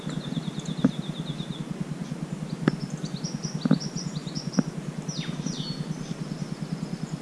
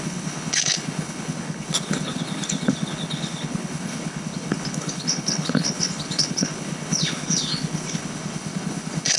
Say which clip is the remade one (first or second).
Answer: second